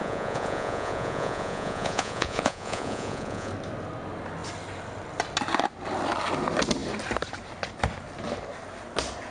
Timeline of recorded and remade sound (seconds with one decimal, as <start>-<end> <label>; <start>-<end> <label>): 0.0-3.5 remade; 3.5-9.3 recorded